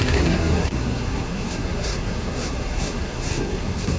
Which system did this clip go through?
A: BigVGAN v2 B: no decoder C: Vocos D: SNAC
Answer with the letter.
D